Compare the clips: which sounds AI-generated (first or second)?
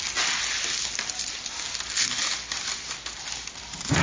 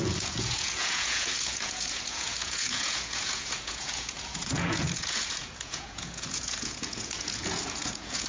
second